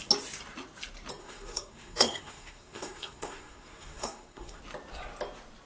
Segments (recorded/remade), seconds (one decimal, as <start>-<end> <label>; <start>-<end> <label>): 0.0-1.2 recorded; 1.2-4.6 remade; 4.6-5.7 recorded